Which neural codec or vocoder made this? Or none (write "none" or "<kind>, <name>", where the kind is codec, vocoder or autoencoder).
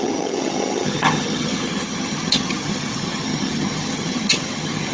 vocoder, HiFi-GAN